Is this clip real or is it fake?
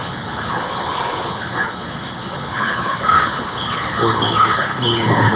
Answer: fake